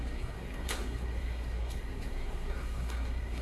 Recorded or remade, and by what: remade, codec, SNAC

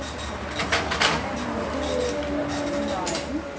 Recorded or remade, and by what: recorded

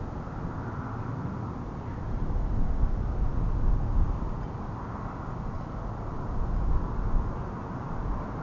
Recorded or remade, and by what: recorded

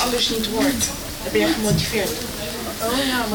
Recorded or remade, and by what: recorded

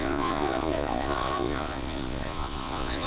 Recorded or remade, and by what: remade, vocoder, Vocos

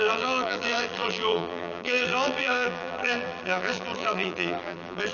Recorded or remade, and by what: remade, vocoder, BigVGAN v2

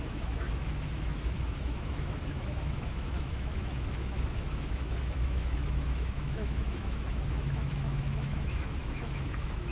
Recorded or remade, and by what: remade, autoencoder, DAC-VAE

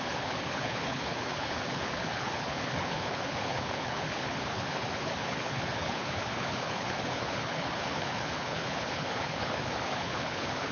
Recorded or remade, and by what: remade, codec, HILCodec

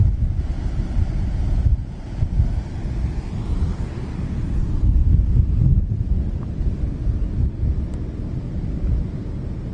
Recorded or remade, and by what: recorded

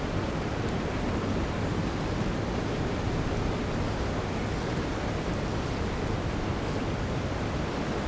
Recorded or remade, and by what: recorded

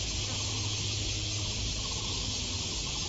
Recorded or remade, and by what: recorded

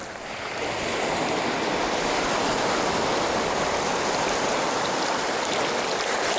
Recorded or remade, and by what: recorded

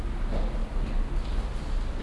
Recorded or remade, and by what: recorded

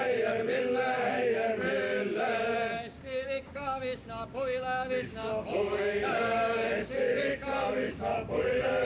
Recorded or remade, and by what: remade, codec, DAC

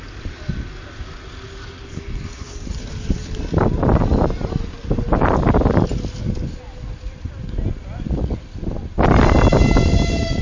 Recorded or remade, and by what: recorded